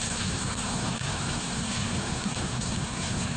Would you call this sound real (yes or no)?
no